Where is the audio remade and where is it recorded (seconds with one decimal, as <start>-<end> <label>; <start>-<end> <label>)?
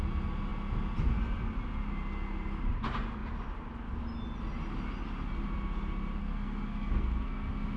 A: 0.0-6.2 recorded; 6.2-7.8 remade